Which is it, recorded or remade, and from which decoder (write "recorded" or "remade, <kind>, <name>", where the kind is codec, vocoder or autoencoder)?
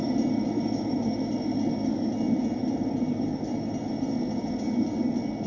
recorded